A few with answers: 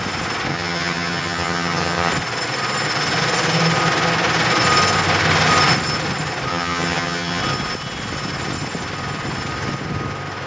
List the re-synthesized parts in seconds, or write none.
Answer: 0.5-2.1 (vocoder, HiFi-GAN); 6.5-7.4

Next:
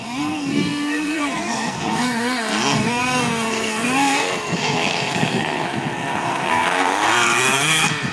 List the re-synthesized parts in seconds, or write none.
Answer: 0.0-8.1 (codec, SNAC)

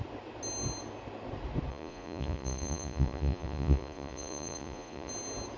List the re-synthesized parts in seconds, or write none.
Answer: 1.7-5.1 (vocoder, Vocos)